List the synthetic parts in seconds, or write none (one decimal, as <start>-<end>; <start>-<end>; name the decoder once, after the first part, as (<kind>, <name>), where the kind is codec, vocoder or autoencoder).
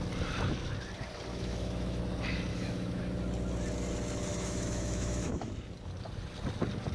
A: 1.3-2.0 (autoencoder, DAC-VAE); 2.5-3.0; 4.3-5.5